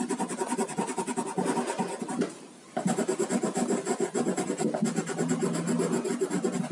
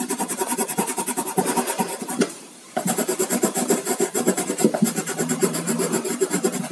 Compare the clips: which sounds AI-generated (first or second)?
second